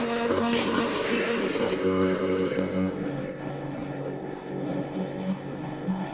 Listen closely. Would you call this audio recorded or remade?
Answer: remade